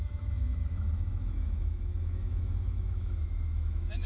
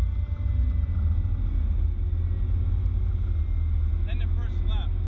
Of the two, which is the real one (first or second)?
second